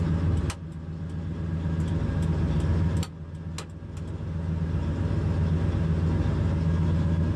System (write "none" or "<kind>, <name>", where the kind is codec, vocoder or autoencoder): none